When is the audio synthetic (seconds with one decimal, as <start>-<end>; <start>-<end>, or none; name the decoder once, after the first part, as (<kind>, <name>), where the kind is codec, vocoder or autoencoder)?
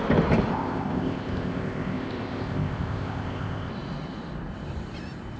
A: 0.5-3.7 (codec, ZipCodec)